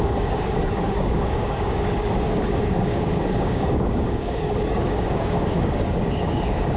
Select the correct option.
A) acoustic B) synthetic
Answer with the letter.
B